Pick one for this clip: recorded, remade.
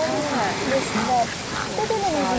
recorded